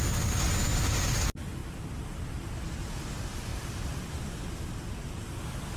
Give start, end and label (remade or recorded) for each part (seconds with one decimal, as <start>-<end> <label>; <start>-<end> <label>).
0.0-1.6 recorded; 1.6-2.4 remade; 2.4-5.8 recorded